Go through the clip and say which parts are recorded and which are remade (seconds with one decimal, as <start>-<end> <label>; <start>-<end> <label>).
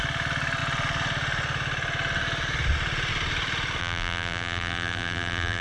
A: 0.0-3.8 recorded; 3.8-5.6 remade